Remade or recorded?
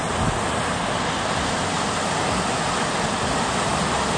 recorded